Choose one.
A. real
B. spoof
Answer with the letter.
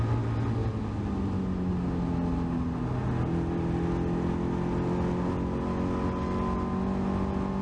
A